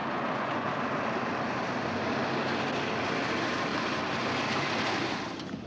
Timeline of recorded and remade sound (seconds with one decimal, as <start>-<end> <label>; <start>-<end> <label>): 0.0-0.7 remade; 0.7-5.7 recorded